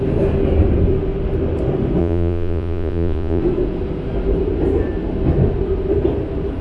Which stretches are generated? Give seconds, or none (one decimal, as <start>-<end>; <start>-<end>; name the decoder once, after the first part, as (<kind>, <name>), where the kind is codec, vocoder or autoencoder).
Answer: 2.0-3.4 (vocoder, Vocos)